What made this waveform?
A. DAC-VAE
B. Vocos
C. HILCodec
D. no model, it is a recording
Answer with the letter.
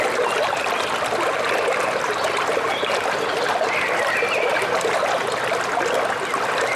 D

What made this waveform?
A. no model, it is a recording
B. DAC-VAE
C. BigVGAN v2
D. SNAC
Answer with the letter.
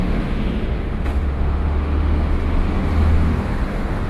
B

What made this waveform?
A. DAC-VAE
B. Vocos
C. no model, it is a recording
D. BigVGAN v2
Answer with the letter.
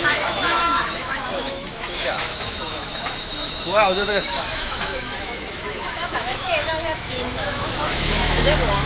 A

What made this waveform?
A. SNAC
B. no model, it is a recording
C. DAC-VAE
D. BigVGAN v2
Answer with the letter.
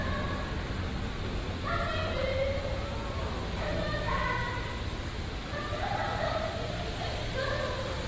B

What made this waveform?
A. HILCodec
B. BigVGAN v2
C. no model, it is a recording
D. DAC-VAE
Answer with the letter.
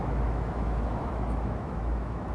D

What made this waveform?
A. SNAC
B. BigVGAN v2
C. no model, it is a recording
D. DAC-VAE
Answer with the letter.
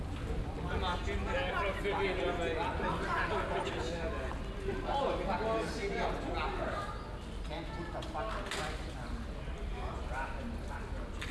C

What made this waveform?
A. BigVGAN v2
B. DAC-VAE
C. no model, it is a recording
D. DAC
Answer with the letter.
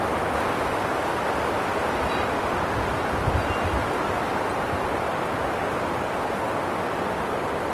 C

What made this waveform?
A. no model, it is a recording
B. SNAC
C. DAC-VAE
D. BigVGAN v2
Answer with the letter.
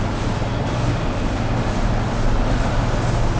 A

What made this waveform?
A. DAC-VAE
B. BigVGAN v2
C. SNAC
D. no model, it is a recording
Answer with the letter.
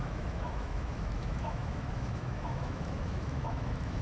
A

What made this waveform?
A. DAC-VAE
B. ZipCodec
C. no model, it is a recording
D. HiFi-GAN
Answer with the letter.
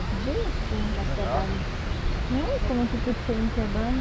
C